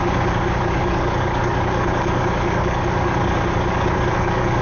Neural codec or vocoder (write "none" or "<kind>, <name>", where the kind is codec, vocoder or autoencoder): codec, DAC